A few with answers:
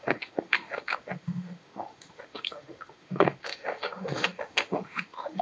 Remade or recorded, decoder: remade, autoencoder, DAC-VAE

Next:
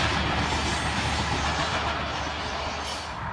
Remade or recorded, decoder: recorded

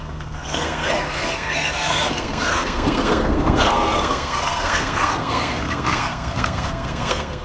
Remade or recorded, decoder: remade, codec, SNAC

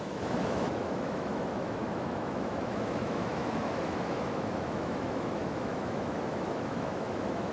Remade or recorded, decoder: remade, autoencoder, DAC-VAE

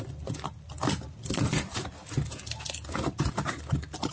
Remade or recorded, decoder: recorded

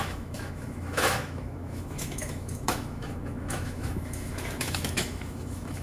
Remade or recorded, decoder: remade, autoencoder, DAC-VAE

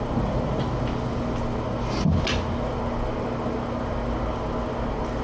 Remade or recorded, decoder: recorded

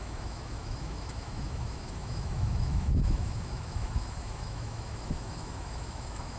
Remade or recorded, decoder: remade, autoencoder, DAC-VAE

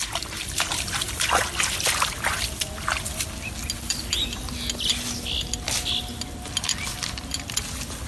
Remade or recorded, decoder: recorded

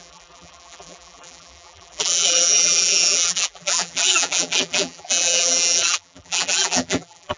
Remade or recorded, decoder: remade, vocoder, BigVGAN v2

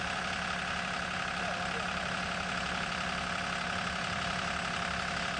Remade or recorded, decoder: recorded